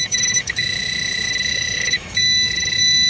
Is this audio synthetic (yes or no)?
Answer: yes